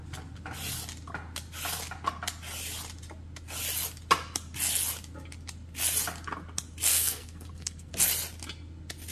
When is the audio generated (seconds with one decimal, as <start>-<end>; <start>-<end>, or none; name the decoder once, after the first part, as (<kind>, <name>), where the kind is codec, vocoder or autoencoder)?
6.9-7.9 (codec, SNAC)